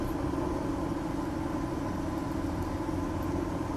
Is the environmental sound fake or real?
real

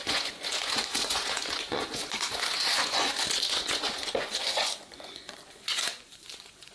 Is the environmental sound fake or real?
fake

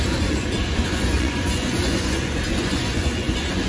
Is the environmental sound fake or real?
fake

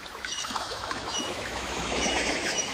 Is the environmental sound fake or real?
fake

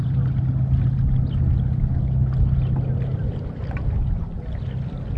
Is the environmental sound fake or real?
real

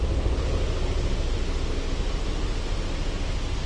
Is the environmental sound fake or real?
real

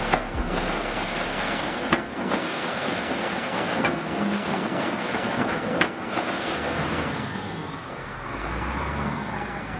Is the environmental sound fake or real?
fake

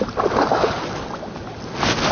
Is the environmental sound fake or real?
real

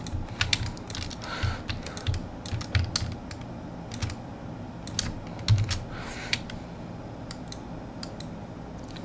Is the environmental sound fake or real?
real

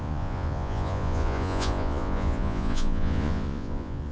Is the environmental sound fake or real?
fake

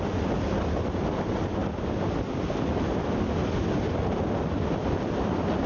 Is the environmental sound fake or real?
real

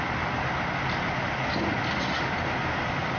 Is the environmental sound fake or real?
real